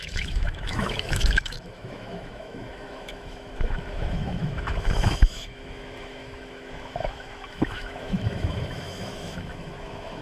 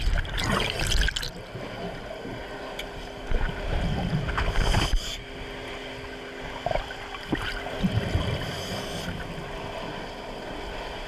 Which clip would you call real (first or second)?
second